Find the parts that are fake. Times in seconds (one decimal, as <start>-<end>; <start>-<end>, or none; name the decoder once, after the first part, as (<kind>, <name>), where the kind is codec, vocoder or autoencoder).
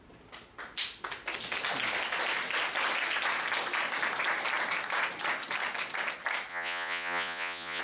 6.5-7.8 (vocoder, Vocos)